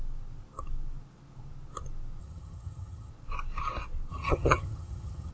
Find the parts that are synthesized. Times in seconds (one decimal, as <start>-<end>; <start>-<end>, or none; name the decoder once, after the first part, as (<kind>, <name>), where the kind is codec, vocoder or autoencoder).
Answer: 2.2-3.1 (vocoder, HiFi-GAN); 4.1-5.3